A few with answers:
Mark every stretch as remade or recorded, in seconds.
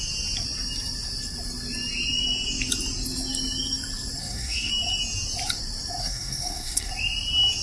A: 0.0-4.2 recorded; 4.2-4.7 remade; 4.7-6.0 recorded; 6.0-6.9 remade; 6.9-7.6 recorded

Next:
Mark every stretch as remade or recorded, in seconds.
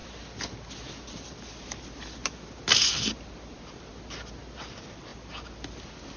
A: 0.0-6.2 recorded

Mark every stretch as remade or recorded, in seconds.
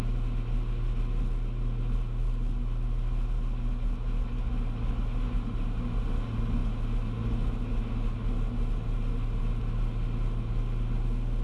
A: 0.0-11.4 recorded